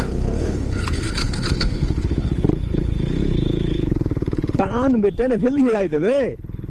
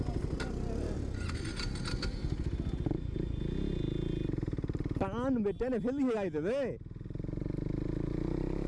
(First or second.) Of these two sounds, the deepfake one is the first